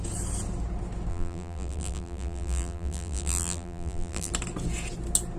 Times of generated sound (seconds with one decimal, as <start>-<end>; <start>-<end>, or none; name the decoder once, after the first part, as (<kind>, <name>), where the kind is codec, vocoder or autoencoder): 1.1-4.3 (vocoder, BigVGAN v2)

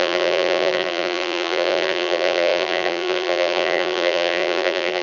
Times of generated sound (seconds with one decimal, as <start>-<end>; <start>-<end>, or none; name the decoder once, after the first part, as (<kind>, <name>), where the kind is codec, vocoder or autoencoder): 0.0-5.0 (vocoder, BigVGAN v2)

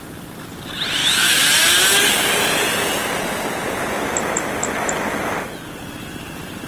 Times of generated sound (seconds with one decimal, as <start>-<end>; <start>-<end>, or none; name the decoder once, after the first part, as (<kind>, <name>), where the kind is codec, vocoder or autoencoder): none

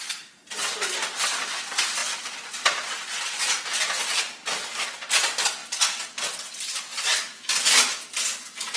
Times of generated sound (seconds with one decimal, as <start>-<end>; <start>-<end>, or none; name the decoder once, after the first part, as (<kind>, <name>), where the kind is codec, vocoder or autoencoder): 2.0-2.9 (vocoder, BigVGAN v2)

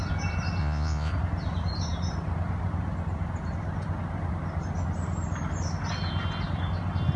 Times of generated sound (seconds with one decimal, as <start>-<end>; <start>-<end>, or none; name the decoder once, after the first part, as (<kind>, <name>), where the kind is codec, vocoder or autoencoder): 0.6-1.1 (vocoder, Vocos)

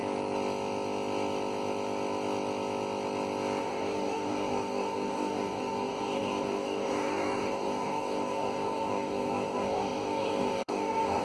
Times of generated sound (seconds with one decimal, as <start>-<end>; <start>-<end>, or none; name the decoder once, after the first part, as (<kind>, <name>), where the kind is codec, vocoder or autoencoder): 3.6-11.2 (codec, DAC)